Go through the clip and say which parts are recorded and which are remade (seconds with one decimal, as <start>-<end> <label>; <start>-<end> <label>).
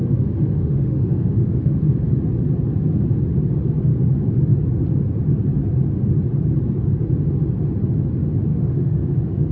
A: 0.0-2.1 remade; 2.1-8.5 recorded; 8.5-9.5 remade